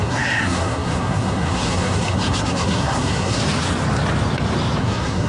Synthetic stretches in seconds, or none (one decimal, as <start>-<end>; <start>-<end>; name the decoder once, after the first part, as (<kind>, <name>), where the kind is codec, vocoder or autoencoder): 0.0-3.4 (codec, SNAC); 4.8-5.3